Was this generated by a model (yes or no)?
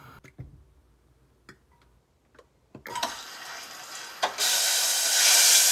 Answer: no